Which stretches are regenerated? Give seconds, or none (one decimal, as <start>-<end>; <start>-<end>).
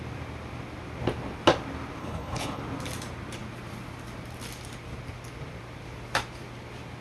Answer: 2.0-2.6